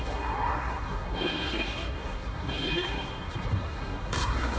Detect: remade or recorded remade